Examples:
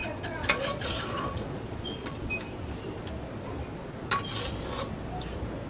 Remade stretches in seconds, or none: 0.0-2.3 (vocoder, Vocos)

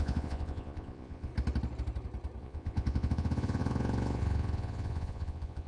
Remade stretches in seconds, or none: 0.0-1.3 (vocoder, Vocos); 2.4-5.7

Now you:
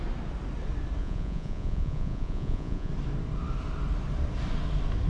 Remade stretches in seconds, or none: 1.0-2.9 (vocoder, Vocos)

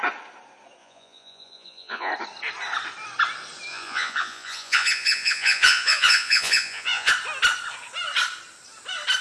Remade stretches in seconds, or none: 0.8-2.1 (vocoder, Vocos); 3.7-7.1